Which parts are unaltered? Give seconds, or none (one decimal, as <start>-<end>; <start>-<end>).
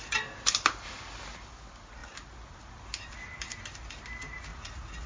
0.0-4.5